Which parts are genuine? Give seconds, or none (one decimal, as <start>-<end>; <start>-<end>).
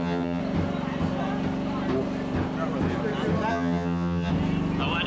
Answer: 0.4-3.5; 4.3-5.1